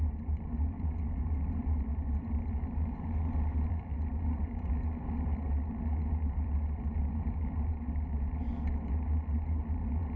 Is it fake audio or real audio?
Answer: fake